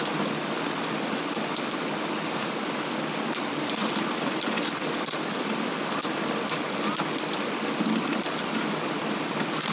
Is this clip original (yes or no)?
yes